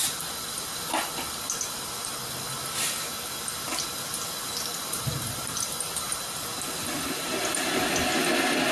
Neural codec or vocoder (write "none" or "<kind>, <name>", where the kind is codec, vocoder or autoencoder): none